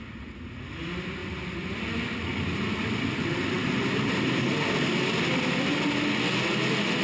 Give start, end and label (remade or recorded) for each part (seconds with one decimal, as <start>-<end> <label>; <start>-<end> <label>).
0.0-7.0 recorded

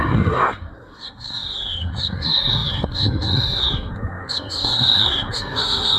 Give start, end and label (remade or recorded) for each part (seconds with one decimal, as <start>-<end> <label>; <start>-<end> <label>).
0.0-6.0 remade

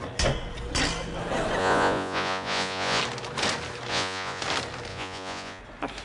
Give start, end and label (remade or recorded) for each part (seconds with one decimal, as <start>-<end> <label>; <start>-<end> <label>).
0.0-1.6 recorded; 1.6-3.0 remade; 3.0-3.9 recorded; 3.9-4.4 remade; 4.4-4.9 recorded; 4.9-5.6 remade; 5.6-6.0 recorded

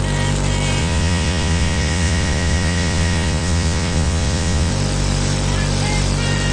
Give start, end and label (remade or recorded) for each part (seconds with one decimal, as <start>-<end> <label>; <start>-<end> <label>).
0.0-0.8 recorded; 0.8-4.7 remade; 4.7-6.5 recorded

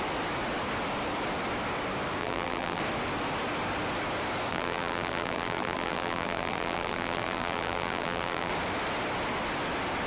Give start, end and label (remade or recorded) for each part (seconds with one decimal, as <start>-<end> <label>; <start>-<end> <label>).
0.0-2.2 recorded; 2.2-2.8 remade; 2.8-4.5 recorded; 4.5-8.5 remade; 8.5-10.1 recorded